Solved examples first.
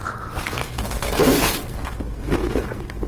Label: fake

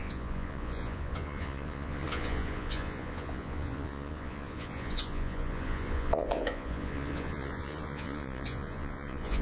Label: fake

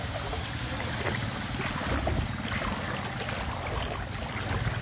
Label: real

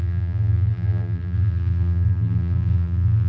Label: fake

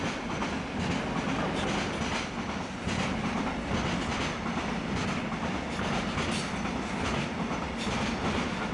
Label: real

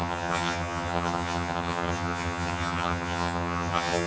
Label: fake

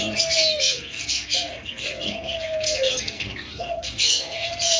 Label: fake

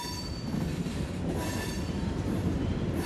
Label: fake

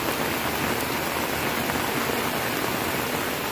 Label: real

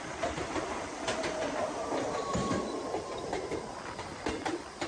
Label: fake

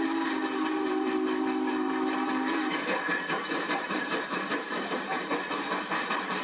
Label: fake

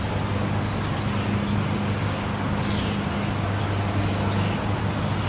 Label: real